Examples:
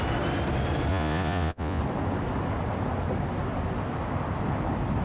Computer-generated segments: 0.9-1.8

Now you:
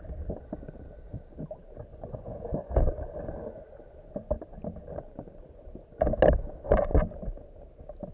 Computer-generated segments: 1.9-2.7

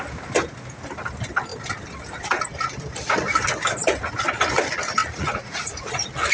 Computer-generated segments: 5.0-6.3

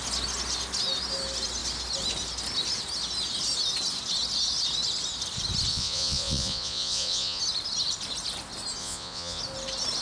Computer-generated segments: 5.7-7.4; 8.8-9.4

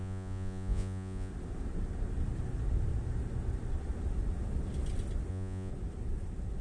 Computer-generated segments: 0.0-1.3; 5.3-5.7

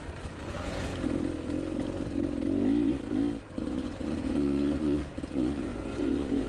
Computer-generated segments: 0.0-0.9; 3.5-6.5

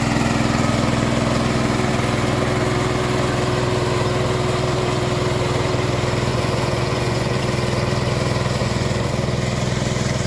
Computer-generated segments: 6.3-7.4; 8.6-9.1

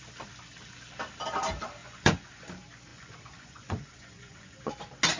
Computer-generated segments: 1.8-2.4; 2.9-4.7